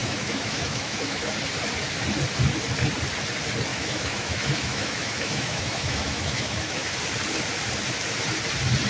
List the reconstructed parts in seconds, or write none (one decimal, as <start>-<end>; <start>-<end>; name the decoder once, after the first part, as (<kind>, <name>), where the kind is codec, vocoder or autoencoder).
0.0-1.2 (autoencoder, DAC-VAE); 3.7-7.0